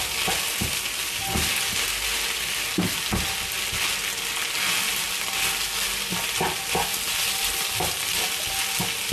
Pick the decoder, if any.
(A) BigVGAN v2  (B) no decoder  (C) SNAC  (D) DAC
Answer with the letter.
B